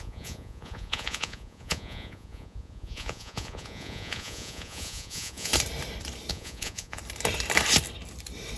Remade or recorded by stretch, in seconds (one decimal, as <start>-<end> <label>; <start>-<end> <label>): 0.0-5.5 remade; 5.5-6.3 recorded; 6.3-7.0 remade; 7.0-8.6 recorded